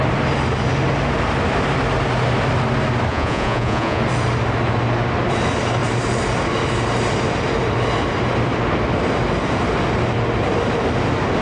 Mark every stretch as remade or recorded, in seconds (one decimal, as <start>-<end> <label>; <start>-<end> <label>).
0.0-3.1 recorded; 3.1-4.0 remade; 4.0-11.4 recorded